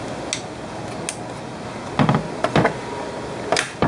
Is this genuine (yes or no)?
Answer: yes